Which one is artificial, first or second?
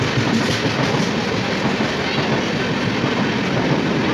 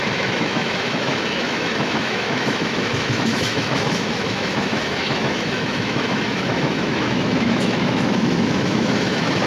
second